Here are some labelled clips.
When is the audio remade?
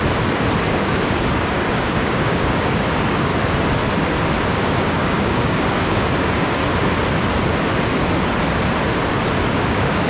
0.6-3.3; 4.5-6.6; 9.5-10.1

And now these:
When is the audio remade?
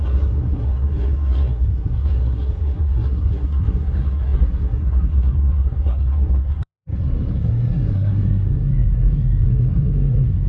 0.0-10.5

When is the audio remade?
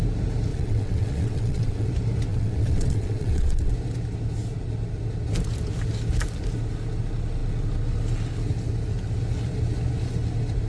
0.5-1.9; 2.3-3.7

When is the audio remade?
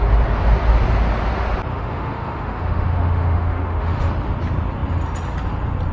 1.7-4.1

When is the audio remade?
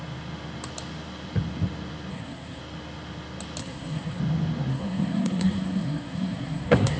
2.1-2.6; 3.6-4.2; 4.7-7.0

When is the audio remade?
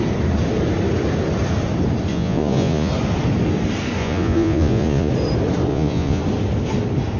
2.1-2.9; 4.0-5.1; 5.7-6.2